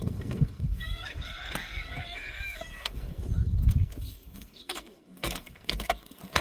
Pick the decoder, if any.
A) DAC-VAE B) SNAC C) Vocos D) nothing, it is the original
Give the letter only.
B